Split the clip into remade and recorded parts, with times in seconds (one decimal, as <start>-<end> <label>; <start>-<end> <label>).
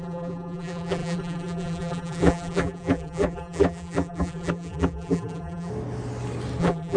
0.0-5.7 remade; 5.7-6.6 recorded; 6.6-7.0 remade